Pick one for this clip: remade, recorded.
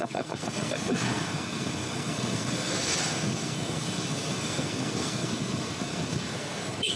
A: remade